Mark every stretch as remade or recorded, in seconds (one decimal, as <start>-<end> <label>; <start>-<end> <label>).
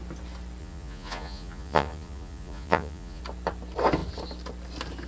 0.0-0.6 recorded; 0.6-3.2 remade; 3.2-5.1 recorded